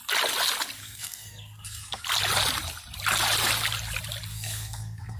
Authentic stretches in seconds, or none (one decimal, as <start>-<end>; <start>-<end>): 0.0-0.8; 2.0-4.3